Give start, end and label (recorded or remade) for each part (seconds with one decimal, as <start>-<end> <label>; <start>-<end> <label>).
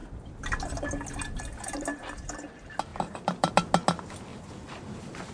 0.0-2.9 recorded; 2.9-3.5 remade; 3.5-4.3 recorded; 4.3-5.3 remade